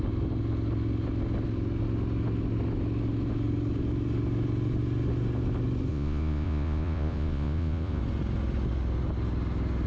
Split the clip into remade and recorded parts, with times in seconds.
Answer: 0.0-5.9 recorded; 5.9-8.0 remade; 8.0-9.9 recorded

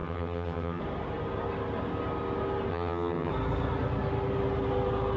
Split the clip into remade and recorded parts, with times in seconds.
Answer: 0.0-0.8 remade; 0.8-2.7 recorded; 2.7-3.3 remade; 3.3-5.2 recorded

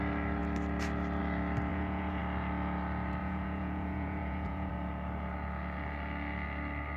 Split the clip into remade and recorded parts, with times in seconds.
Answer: 0.0-1.7 recorded; 1.7-2.2 remade; 2.2-3.2 recorded; 3.2-4.7 remade; 4.7-7.0 recorded

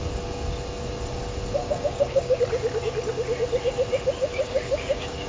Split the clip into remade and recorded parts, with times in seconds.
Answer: 0.0-1.6 recorded; 1.6-2.4 remade; 2.4-4.3 recorded; 4.3-5.3 remade